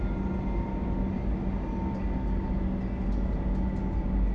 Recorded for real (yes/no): yes